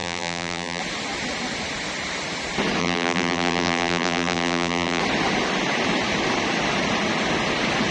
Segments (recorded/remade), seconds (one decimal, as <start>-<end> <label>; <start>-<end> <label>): 0.0-0.8 remade; 0.8-2.8 recorded; 2.8-5.0 remade; 5.0-7.9 recorded